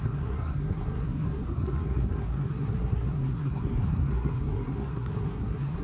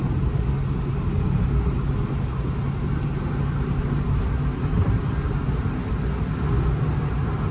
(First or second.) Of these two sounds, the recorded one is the second